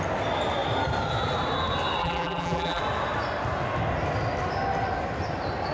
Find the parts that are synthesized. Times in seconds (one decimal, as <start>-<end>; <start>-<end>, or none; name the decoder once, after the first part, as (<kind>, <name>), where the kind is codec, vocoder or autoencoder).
2.0-2.8 (vocoder, BigVGAN v2)